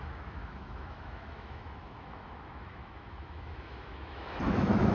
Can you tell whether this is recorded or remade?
remade